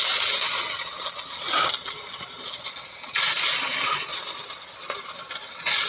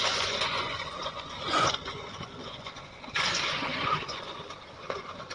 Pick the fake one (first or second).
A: second